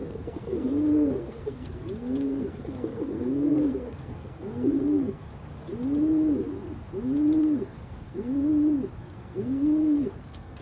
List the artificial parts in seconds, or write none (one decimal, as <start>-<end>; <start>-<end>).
0.0-5.3; 7.4-8.5; 9.0-10.6